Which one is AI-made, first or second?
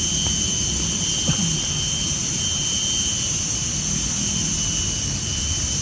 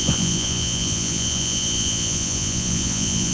second